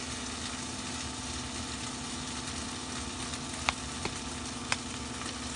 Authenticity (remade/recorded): recorded